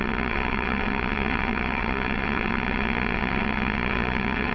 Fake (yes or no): yes